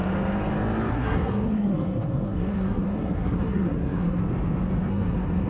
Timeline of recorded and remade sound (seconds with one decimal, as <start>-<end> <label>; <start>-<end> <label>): 0.0-0.9 recorded; 0.9-4.2 remade; 4.2-4.9 recorded; 4.9-5.5 remade